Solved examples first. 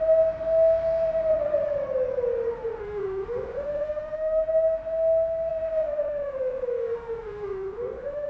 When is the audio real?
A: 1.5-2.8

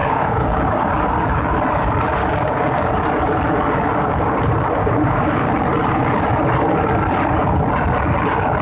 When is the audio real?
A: 0.9-2.2; 2.9-4.8; 5.5-8.6